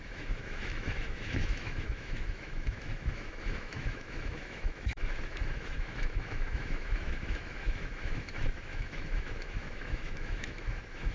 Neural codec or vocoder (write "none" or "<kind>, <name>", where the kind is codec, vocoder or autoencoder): autoencoder, DAC-VAE